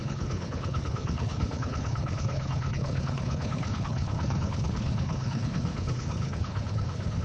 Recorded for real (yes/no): no